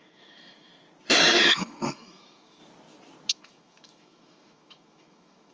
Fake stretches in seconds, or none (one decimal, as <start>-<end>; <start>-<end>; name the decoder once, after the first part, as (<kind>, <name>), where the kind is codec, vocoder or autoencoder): 0.0-0.7 (autoencoder, DAC-VAE); 1.2-2.6; 3.3-5.5